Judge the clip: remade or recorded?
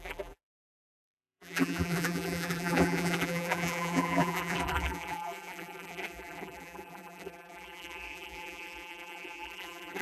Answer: remade